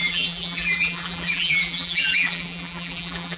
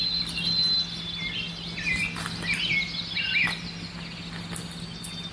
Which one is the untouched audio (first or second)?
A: second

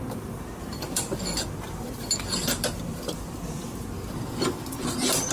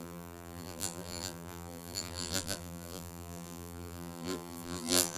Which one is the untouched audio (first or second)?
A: first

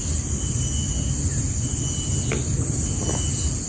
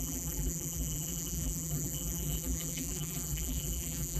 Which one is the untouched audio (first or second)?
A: first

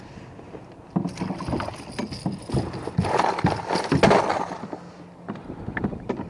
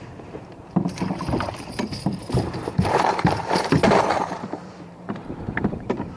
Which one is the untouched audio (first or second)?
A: first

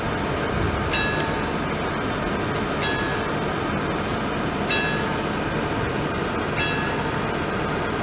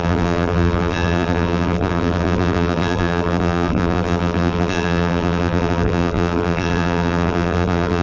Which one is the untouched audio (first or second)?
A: first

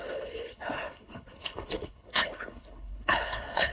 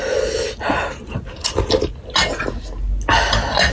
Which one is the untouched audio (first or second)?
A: second